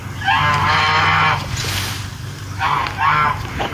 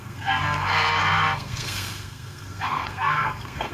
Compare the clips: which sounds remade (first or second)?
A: second